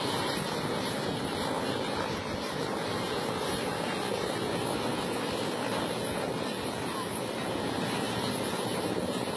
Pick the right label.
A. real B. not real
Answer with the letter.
A